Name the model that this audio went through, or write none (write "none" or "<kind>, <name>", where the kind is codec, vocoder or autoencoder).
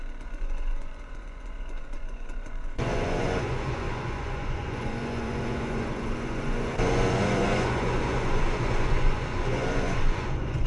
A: vocoder, Vocos